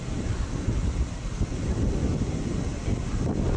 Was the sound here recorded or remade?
recorded